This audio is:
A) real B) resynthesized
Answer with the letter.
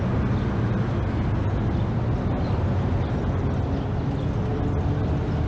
A